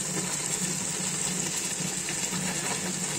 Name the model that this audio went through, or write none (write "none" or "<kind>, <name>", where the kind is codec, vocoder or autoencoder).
none